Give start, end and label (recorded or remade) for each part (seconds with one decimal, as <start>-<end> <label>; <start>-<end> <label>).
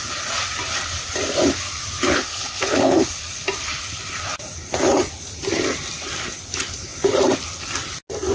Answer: 0.0-2.1 recorded; 2.1-3.2 remade; 3.2-8.3 recorded